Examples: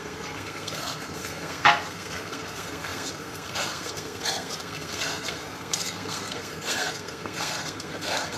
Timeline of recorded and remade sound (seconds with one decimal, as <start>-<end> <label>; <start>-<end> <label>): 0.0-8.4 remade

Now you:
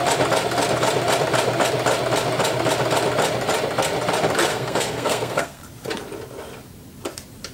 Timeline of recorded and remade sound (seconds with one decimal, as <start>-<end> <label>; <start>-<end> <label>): 0.0-4.5 recorded; 4.5-5.6 remade; 5.6-7.5 recorded

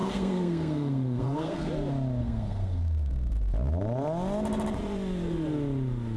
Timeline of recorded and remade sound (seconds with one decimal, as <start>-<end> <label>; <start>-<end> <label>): 0.0-1.7 remade; 1.7-2.2 recorded; 2.2-3.1 remade; 3.1-6.2 recorded

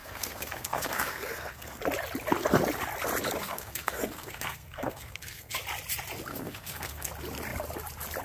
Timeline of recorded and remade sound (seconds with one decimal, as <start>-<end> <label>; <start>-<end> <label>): 0.0-1.8 remade; 1.8-3.4 recorded; 3.4-5.6 remade; 5.6-6.3 recorded; 6.3-7.1 remade; 7.1-8.2 recorded

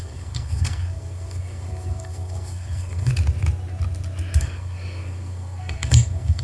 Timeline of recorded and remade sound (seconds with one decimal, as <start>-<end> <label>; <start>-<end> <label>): 0.0-3.1 remade; 3.1-4.4 recorded; 4.4-6.4 remade

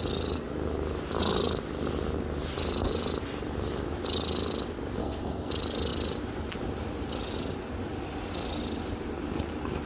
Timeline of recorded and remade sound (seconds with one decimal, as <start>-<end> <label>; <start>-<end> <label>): 0.0-5.0 recorded; 5.0-5.5 remade; 5.5-9.9 recorded

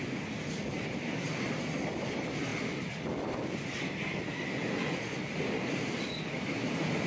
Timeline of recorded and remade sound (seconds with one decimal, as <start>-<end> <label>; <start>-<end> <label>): 0.0-7.1 recorded

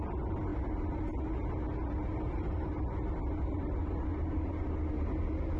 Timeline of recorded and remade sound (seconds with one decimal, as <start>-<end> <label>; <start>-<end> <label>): 0.0-5.6 recorded